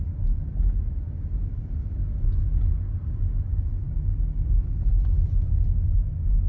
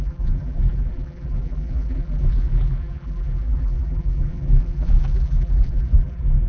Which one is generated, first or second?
second